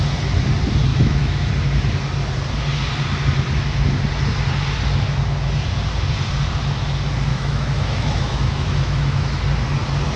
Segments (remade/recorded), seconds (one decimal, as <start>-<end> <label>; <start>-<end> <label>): 0.0-0.9 recorded; 0.9-1.5 remade; 1.5-7.3 recorded; 7.3-9.4 remade; 9.4-10.2 recorded